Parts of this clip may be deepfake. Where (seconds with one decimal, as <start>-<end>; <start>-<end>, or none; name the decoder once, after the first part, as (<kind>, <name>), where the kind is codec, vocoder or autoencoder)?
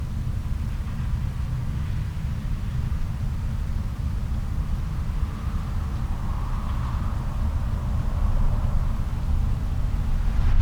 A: none